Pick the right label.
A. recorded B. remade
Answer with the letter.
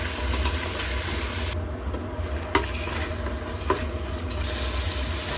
A